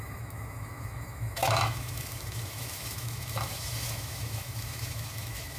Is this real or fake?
fake